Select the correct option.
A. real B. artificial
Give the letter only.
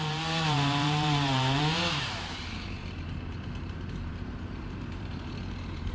B